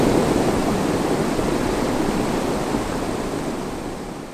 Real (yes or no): yes